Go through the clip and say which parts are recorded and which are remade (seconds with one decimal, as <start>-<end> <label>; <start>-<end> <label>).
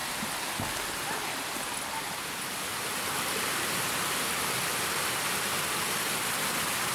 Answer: 0.0-6.9 recorded